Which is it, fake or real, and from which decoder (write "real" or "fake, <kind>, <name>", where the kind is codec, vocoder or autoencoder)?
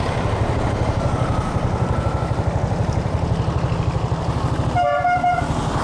real